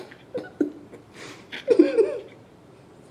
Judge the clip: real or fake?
fake